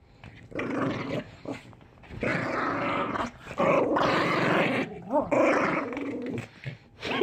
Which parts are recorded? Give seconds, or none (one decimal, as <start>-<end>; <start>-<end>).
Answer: 0.0-7.2